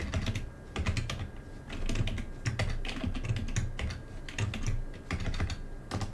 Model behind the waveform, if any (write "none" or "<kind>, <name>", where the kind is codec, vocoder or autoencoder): none